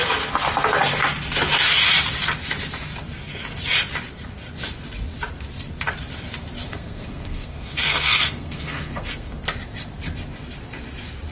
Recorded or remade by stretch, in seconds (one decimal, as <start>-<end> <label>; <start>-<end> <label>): 0.0-6.7 recorded; 6.7-9.4 remade; 9.4-11.3 recorded